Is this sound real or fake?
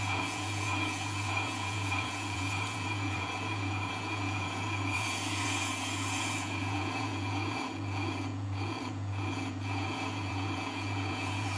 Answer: fake